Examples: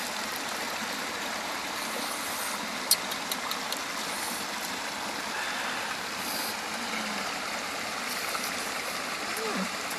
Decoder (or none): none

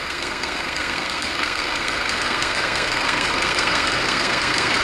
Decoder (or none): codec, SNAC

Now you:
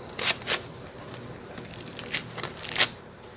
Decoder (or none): none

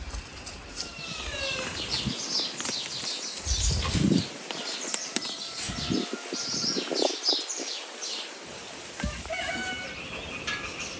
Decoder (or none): none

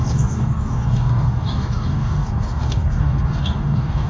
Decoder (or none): codec, DAC